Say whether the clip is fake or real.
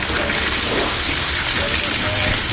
real